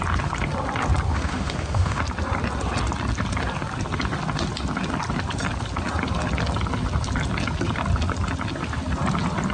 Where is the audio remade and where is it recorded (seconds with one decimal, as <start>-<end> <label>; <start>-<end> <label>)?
0.0-1.1 recorded; 1.1-2.0 remade; 2.0-9.5 recorded